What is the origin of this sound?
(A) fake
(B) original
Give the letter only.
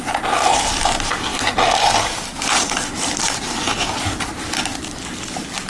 B